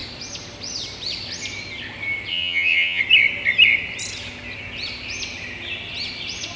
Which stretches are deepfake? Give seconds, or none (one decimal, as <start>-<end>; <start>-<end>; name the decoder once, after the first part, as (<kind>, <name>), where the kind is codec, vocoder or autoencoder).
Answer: 2.3-3.0 (vocoder, HiFi-GAN)